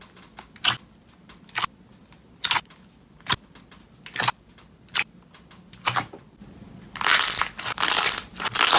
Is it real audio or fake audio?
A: real